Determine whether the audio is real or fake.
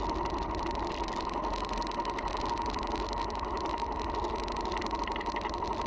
real